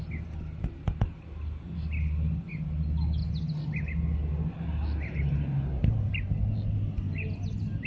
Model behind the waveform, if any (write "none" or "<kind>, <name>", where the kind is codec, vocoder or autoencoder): none